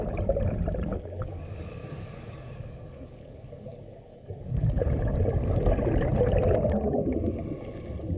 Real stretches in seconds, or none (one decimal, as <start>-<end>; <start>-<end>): 0.0-0.9; 4.8-8.2